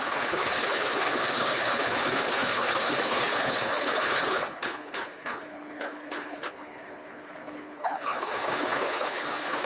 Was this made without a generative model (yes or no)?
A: no